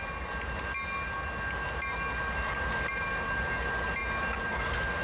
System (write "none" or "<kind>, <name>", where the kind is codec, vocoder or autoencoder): none